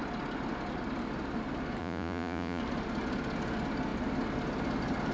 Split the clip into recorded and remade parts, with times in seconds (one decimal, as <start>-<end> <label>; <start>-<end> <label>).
0.0-1.8 recorded; 1.8-2.6 remade; 2.6-5.1 recorded